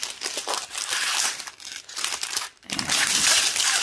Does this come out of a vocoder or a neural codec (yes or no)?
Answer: no